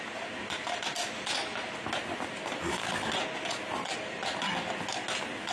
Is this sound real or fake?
real